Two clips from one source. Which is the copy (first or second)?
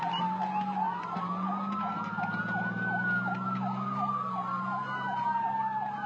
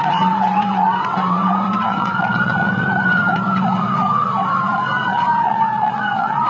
second